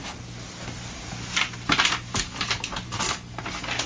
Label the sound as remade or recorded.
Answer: recorded